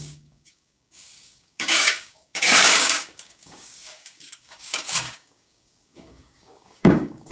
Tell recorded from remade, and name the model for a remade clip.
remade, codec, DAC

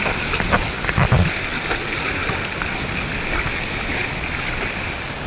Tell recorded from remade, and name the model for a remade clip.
recorded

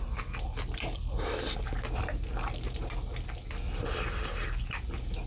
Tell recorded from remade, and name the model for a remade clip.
recorded